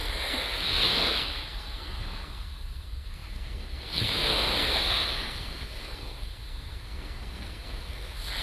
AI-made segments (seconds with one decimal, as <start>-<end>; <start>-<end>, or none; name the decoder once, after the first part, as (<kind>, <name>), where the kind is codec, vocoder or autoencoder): 0.0-8.4 (codec, SNAC)